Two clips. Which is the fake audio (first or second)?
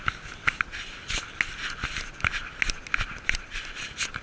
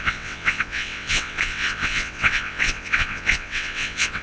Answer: second